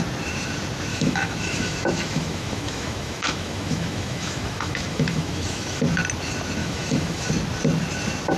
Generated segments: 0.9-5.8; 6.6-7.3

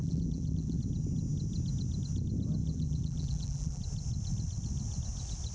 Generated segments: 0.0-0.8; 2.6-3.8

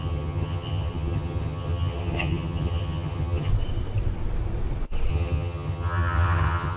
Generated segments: 0.0-3.5; 5.1-6.8

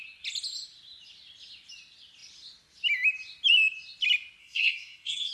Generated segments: 4.4-5.3